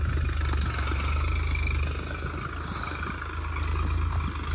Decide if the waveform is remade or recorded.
recorded